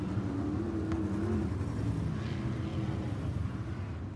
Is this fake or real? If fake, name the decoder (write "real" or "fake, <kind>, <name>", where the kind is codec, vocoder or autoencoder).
real